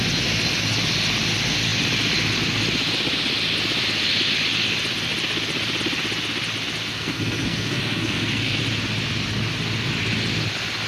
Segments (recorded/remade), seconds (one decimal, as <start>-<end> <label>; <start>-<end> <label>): 0.0-6.9 recorded; 6.9-8.6 remade; 8.6-10.9 recorded